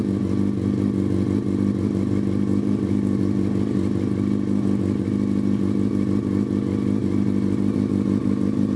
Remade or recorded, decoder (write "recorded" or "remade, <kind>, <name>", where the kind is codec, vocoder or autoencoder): recorded